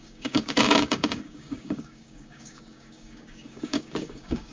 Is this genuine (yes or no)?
no